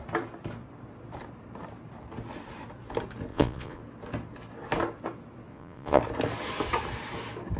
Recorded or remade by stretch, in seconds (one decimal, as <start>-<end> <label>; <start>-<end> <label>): 0.0-3.3 recorded; 3.3-3.8 remade; 3.8-5.5 recorded; 5.5-6.0 remade; 6.0-7.6 recorded